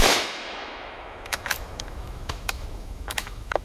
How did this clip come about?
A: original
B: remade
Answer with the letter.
B